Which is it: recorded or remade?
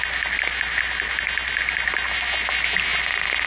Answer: recorded